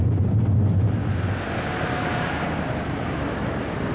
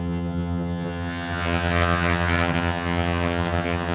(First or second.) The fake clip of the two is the second